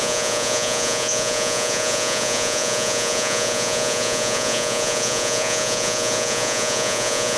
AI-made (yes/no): yes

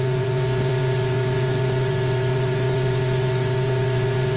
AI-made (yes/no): yes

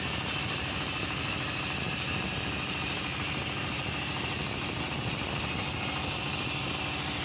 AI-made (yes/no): no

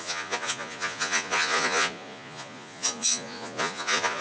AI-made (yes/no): yes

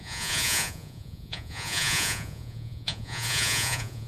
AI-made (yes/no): yes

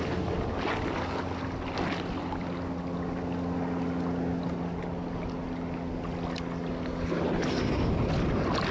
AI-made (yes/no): no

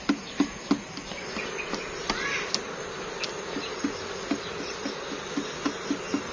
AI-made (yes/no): no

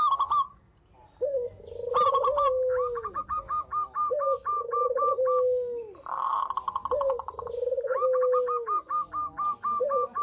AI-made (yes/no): no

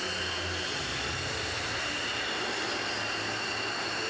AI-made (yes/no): no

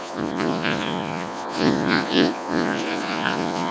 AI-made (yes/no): yes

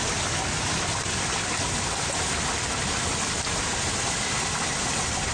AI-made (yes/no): no